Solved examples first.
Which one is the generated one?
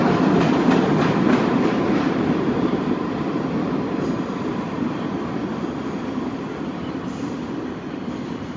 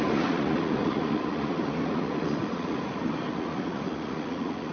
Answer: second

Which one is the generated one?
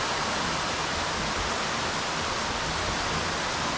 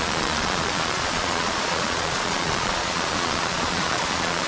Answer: second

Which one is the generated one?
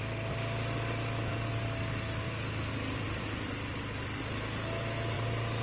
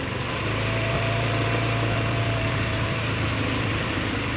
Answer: second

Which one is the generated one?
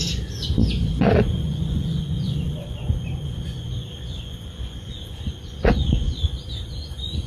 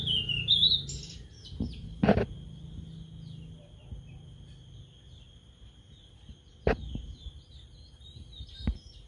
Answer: first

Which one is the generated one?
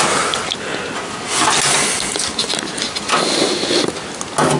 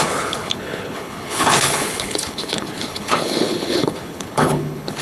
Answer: second